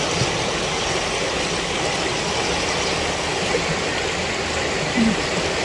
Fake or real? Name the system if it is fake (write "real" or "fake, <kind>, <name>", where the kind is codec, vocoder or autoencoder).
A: real